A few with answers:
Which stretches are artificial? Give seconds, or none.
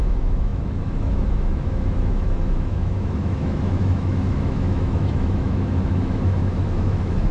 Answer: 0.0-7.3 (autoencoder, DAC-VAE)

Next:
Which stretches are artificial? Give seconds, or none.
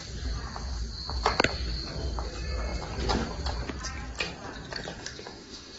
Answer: 5.0-5.8 (autoencoder, DAC-VAE)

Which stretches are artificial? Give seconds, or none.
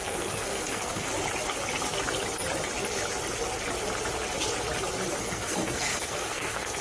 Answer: 0.0-1.1 (codec, SNAC); 5.2-6.8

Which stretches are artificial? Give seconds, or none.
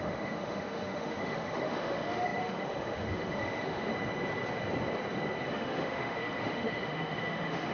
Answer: 0.0-3.9 (autoencoder, DAC-VAE); 5.5-7.7